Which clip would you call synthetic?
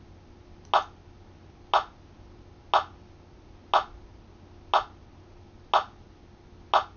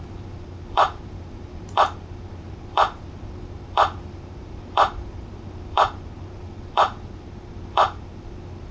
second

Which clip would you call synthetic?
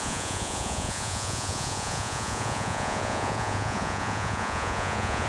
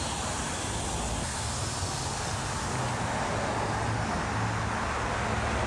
first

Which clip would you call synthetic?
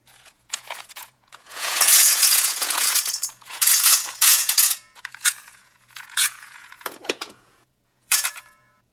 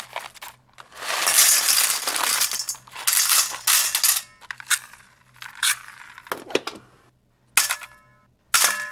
first